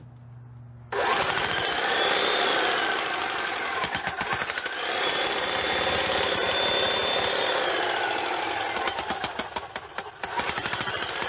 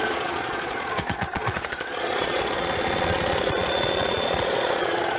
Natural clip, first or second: first